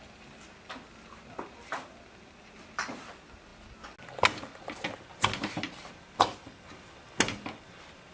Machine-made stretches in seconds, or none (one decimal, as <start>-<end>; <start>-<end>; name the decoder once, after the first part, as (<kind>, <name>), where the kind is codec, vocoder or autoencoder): none